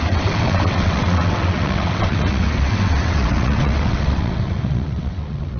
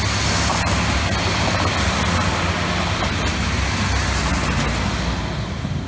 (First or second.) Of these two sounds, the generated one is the first